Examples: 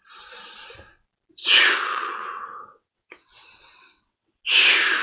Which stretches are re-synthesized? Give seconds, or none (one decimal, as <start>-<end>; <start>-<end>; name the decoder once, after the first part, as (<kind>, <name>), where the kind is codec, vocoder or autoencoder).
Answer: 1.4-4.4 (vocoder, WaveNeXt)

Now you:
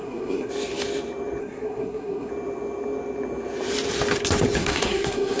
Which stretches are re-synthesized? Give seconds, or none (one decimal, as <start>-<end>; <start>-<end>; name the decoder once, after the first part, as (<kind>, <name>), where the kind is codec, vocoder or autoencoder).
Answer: 0.0-0.5 (codec, SNAC); 1.4-2.3; 4.6-5.4

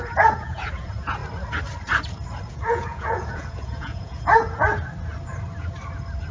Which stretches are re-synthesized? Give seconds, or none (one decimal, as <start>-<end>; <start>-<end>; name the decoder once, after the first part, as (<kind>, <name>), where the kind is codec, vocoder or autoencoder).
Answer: 0.0-1.2 (vocoder, Vocos); 2.5-4.7

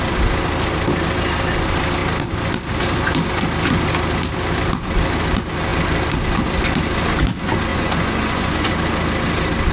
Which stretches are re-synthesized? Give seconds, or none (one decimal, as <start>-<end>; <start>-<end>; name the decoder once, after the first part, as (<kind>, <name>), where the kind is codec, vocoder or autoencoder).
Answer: 7.7-8.7 (vocoder, Vocos)

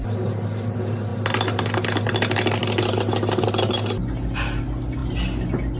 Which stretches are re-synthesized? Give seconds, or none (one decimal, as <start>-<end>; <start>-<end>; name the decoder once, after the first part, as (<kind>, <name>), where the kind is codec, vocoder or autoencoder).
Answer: none

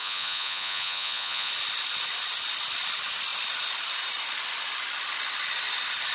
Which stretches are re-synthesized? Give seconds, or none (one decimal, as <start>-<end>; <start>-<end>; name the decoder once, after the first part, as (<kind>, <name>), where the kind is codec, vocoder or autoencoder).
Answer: 0.0-1.5 (vocoder, Vocos)

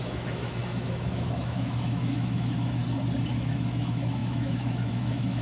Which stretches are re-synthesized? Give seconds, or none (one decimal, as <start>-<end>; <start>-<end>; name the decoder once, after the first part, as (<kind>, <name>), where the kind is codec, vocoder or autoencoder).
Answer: 0.0-2.8 (autoencoder, DAC-VAE); 3.3-5.4